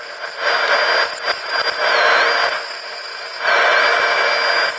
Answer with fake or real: real